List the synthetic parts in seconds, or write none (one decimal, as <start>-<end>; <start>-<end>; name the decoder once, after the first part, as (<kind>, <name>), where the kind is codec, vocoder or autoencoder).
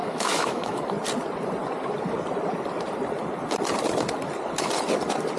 0.0-0.8 (autoencoder, DAC-VAE)